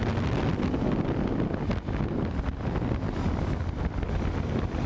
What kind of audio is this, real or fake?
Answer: real